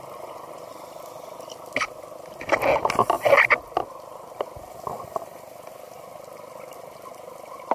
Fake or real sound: real